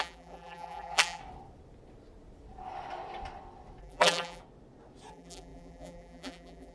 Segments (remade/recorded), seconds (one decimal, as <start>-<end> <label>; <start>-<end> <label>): 0.0-1.2 remade; 1.2-3.8 recorded; 3.8-4.4 remade; 4.4-5.1 recorded; 5.1-6.7 remade